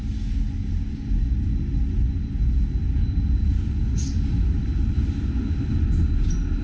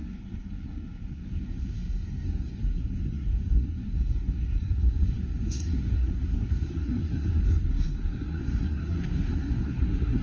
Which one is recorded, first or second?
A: first